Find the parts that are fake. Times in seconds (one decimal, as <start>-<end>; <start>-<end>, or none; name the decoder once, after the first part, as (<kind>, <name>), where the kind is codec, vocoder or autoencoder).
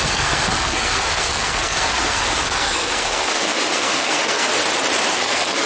0.0-4.5 (codec, SNAC); 5.1-5.7